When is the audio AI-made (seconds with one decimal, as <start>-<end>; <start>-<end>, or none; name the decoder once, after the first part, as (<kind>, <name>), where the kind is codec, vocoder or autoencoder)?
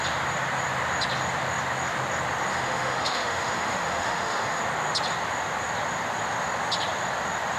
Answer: 2.5-4.6 (autoencoder, DAC-VAE)